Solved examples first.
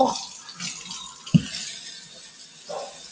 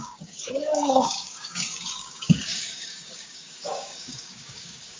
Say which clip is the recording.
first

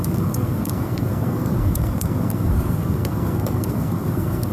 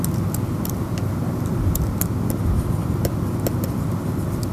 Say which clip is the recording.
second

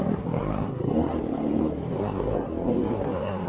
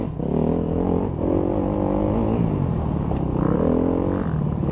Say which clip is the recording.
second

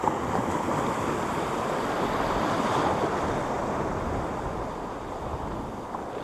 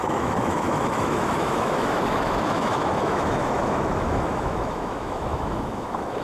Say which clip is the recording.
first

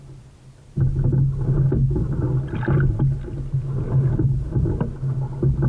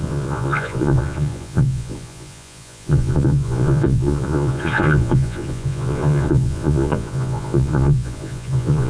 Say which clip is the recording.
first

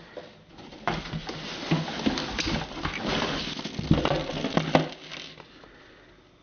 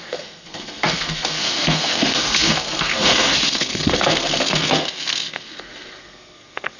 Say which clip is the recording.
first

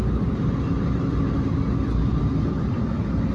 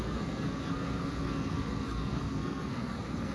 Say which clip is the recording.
first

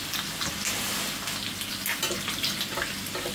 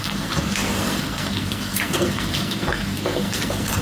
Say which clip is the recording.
first